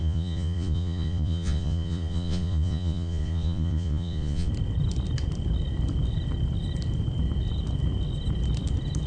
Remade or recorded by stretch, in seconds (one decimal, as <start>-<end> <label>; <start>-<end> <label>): 0.0-4.5 remade; 4.5-9.1 recorded